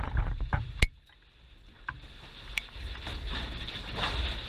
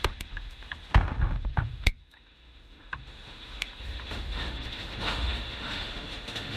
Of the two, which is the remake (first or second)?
second